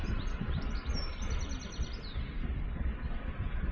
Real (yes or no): yes